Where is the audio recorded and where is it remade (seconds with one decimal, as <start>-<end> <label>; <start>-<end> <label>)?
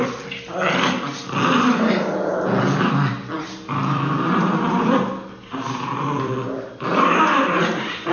0.0-8.1 recorded